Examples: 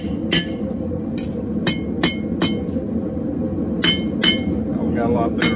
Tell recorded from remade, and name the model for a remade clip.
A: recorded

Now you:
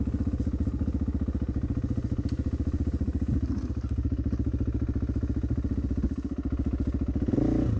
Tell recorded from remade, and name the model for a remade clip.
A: recorded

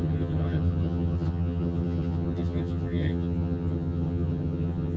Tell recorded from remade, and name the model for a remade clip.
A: remade, vocoder, HiFi-GAN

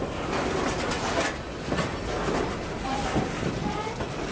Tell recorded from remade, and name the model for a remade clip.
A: recorded